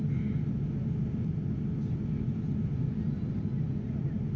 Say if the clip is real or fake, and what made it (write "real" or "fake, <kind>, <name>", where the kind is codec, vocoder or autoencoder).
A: real